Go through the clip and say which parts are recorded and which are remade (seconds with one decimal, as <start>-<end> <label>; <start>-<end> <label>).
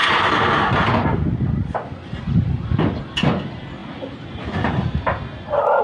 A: 0.0-5.8 recorded